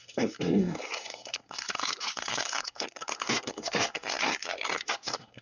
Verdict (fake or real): fake